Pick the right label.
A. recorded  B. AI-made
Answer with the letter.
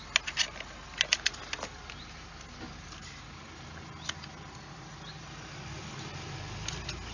A